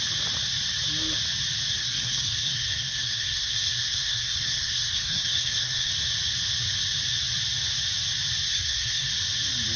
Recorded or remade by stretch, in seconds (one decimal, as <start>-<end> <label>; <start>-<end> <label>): 0.0-1.8 recorded; 1.8-5.9 remade; 5.9-8.5 recorded; 8.5-9.1 remade; 9.1-9.8 recorded